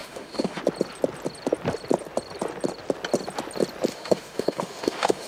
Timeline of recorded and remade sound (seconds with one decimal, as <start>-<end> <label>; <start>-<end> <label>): 0.0-0.6 remade; 0.6-3.9 recorded; 3.9-5.3 remade